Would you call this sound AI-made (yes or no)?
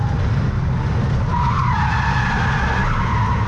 no